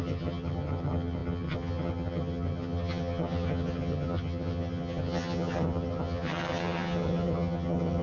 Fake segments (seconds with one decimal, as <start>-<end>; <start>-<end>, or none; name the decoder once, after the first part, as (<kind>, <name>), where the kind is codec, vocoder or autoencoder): 0.0-8.0 (vocoder, HiFi-GAN)